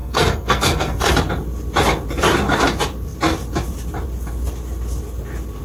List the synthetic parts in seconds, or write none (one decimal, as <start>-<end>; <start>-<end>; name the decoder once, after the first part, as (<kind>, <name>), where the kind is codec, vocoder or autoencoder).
0.0-1.1 (codec, SNAC)